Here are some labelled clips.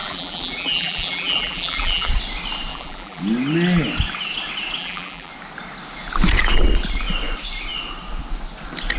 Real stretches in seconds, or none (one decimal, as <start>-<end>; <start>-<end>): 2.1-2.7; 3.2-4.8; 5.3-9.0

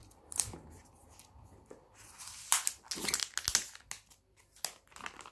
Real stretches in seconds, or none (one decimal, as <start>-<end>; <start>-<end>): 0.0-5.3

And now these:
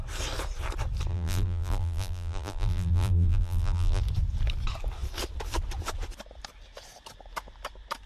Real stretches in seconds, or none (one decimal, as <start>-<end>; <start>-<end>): 0.0-1.1; 4.0-8.1

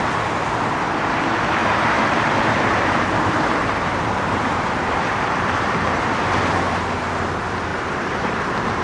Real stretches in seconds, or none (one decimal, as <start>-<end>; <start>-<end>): 0.0-1.6; 5.7-7.7; 8.3-8.8

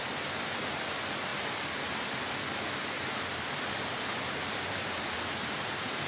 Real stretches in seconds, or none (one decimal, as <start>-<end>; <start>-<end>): 0.0-6.1

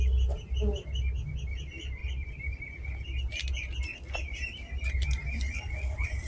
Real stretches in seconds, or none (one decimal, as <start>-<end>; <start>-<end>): 0.0-2.0; 2.6-6.3